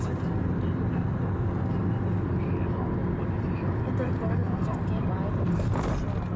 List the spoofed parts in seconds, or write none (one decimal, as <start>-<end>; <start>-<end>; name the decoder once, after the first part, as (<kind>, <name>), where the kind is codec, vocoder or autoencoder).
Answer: 3.0-3.8 (vocoder, BigVGAN v2)